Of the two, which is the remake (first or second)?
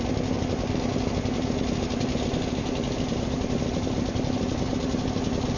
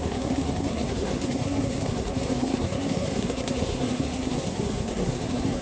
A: second